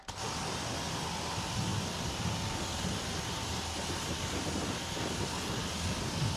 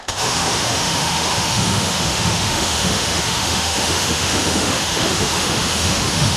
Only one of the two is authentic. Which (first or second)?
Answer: first